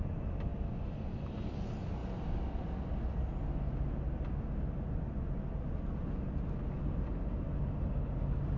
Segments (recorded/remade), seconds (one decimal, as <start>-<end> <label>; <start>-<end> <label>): 0.0-8.6 recorded